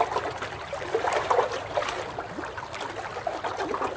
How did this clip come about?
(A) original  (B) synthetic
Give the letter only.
A